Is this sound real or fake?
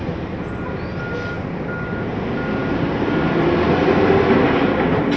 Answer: real